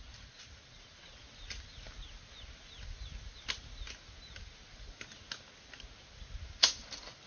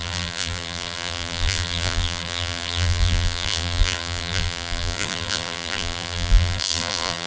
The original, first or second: first